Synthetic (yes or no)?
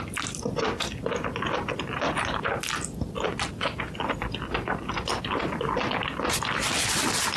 no